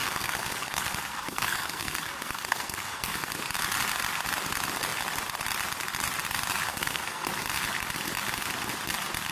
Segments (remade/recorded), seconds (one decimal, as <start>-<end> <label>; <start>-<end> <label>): 0.0-3.3 remade; 3.3-6.7 recorded; 6.7-7.3 remade; 7.3-9.3 recorded